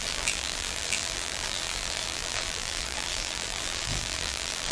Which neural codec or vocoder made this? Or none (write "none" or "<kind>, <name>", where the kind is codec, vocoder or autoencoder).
vocoder, BigVGAN v2